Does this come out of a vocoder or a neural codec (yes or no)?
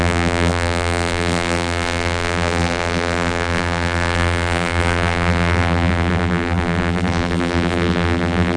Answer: yes